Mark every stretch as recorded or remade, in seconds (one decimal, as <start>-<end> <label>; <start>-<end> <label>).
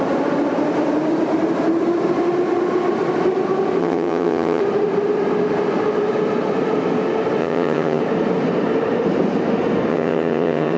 0.0-3.8 recorded; 3.8-4.6 remade; 4.6-7.4 recorded; 7.4-8.0 remade; 8.0-9.9 recorded; 9.9-10.8 remade